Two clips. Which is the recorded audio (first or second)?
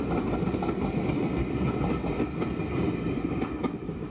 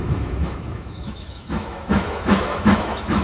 first